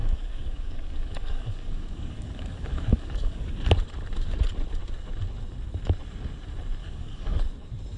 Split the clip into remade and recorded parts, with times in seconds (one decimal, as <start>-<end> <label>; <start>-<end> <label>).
0.0-3.5 remade; 3.5-6.8 recorded; 6.8-7.4 remade; 7.4-8.0 recorded